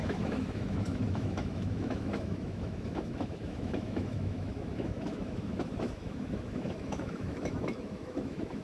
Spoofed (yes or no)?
yes